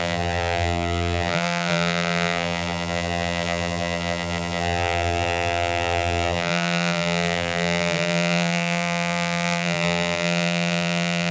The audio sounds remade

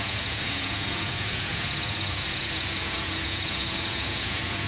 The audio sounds remade